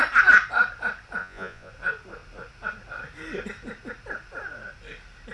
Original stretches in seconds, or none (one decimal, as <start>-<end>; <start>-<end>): 0.0-1.2; 1.7-5.3